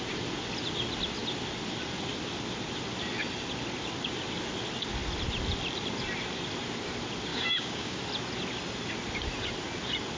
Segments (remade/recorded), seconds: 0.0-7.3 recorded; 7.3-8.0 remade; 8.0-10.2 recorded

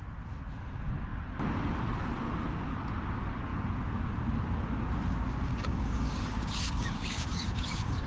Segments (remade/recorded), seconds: 0.0-5.5 recorded; 5.5-8.1 remade

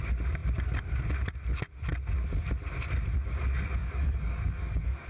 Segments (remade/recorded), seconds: 0.0-3.8 recorded; 3.8-5.1 remade

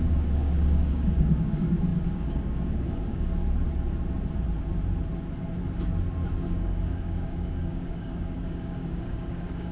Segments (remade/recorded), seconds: 0.0-3.4 remade; 3.4-6.3 recorded; 6.3-9.7 remade

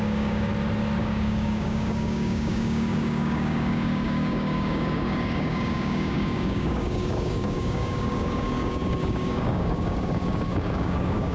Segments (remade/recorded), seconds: 0.0-0.5 remade; 0.5-1.0 recorded; 1.0-11.3 remade

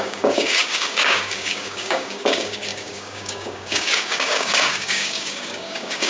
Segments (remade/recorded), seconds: 0.0-6.1 remade

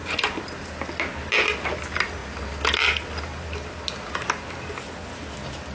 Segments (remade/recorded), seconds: 0.0-5.7 recorded

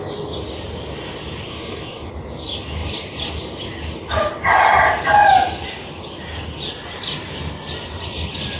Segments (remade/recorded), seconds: 0.0-1.5 recorded; 1.5-2.1 remade; 2.1-8.6 recorded